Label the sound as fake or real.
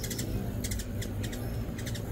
real